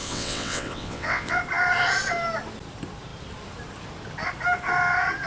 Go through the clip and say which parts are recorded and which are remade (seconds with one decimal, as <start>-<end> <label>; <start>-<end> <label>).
0.0-1.4 remade; 1.4-5.3 recorded